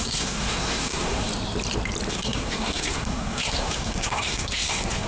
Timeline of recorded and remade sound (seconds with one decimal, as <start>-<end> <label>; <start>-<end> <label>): 0.0-1.3 remade; 1.3-2.1 recorded; 2.1-5.1 remade